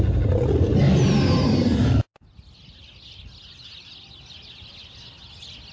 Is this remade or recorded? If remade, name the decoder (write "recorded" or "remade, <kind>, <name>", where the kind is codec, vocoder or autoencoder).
recorded